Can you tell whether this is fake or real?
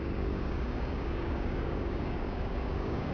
fake